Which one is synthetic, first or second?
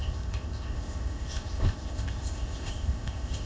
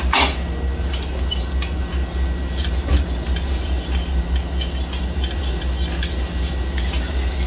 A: first